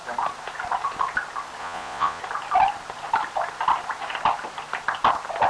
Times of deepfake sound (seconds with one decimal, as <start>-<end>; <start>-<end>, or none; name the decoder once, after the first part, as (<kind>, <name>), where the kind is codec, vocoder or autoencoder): 1.6-2.2 (vocoder, Vocos)